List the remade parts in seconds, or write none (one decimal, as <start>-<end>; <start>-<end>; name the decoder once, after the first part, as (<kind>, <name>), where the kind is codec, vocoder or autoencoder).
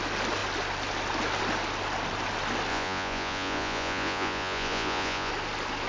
2.7-5.3 (vocoder, Vocos)